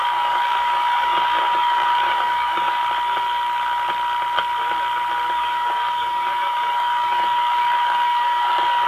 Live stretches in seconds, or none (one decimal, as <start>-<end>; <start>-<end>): 2.8-5.3